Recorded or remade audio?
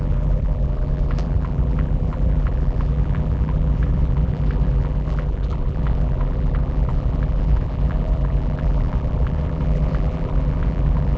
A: remade